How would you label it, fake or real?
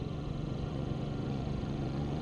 fake